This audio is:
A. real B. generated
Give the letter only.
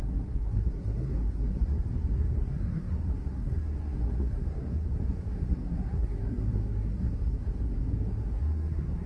B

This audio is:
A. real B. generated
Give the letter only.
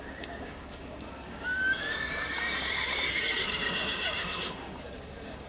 B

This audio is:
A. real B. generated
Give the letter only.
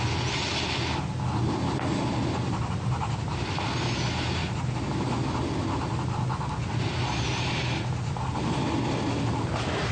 A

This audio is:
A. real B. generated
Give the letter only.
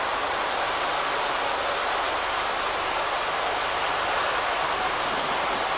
A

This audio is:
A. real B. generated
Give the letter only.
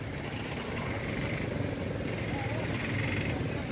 A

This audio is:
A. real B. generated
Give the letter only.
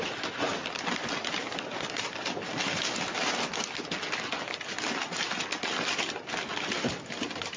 A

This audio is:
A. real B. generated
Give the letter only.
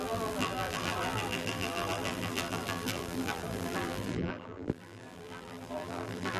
B